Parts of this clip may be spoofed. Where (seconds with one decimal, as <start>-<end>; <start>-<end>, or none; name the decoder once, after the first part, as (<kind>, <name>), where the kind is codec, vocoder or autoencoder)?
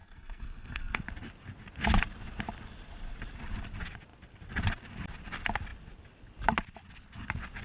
0.0-1.0 (codec, SNAC)